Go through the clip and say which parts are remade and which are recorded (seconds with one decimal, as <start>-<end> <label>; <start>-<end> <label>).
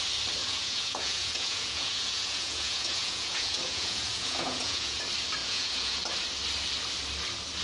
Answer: 0.0-0.4 recorded; 0.4-5.0 remade; 5.0-5.4 recorded; 5.4-6.0 remade; 6.0-7.6 recorded